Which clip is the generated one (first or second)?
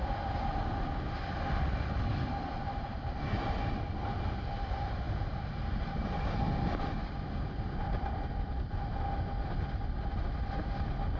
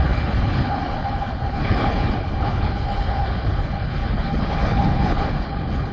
second